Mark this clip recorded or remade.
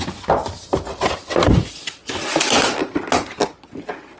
recorded